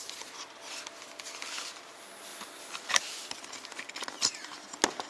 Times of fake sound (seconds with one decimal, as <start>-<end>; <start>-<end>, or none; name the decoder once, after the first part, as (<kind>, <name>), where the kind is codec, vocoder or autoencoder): none